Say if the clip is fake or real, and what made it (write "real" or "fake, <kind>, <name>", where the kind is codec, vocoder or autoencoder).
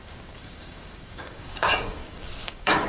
fake, codec, DAC